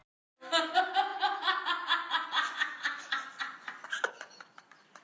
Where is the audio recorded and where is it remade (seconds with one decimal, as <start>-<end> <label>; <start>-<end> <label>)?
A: 0.0-0.5 recorded; 0.5-5.0 remade